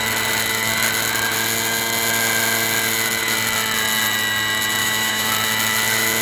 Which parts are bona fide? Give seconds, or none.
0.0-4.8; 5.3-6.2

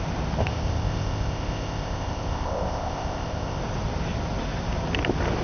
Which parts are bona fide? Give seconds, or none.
0.0-0.4; 3.6-5.4